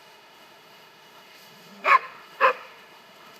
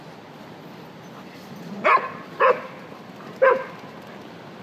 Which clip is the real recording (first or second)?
second